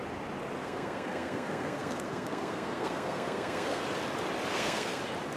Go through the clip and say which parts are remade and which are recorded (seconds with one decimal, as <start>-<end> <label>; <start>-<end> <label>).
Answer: 0.0-0.6 recorded; 0.6-3.8 remade; 3.8-4.5 recorded; 4.5-5.0 remade; 5.0-5.4 recorded